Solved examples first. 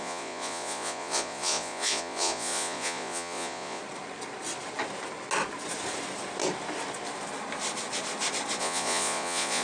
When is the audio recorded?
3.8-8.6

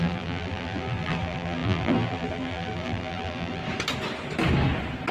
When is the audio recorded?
3.6-5.1

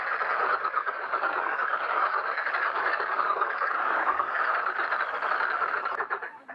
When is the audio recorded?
0.0-0.5; 4.4-6.5

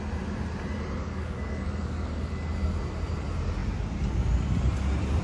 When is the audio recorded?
0.0-1.0; 2.2-5.2

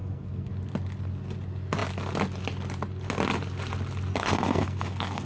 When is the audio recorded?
0.5-4.1

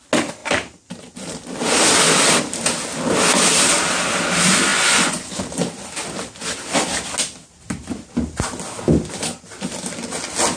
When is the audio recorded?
0.0-4.7; 5.4-10.6